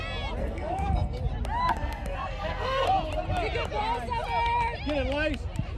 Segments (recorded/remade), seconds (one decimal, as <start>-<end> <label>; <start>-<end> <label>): 0.0-0.4 recorded; 0.4-1.2 remade; 1.2-1.6 recorded; 1.6-2.9 remade; 2.9-5.8 recorded